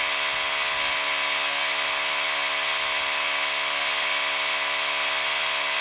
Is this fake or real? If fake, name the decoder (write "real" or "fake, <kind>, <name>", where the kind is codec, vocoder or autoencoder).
real